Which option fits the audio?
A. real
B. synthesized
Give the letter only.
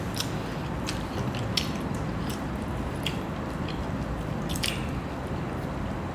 A